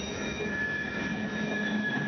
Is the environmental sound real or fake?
fake